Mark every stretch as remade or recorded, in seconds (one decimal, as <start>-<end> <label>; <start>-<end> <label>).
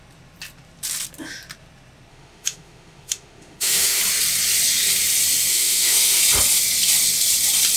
0.0-2.1 recorded; 2.1-4.0 remade; 4.0-5.5 recorded; 5.5-6.2 remade; 6.2-7.8 recorded